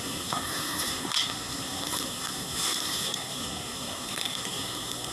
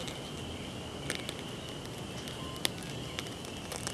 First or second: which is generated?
first